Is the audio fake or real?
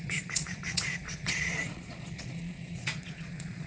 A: fake